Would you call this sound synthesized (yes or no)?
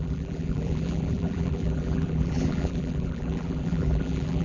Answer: yes